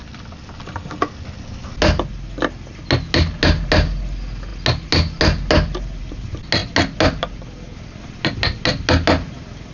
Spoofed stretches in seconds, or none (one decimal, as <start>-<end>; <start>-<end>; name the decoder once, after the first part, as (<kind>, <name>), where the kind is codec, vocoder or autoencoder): none